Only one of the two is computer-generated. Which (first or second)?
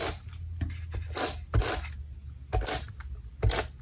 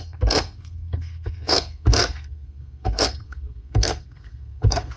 second